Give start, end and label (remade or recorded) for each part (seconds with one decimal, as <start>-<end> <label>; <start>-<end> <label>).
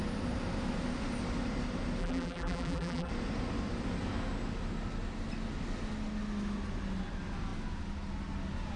0.0-2.0 recorded; 2.0-3.1 remade; 3.1-8.8 recorded